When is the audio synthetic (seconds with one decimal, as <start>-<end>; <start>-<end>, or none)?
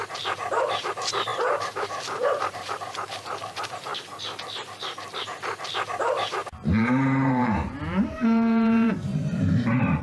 0.0-3.9; 5.9-10.0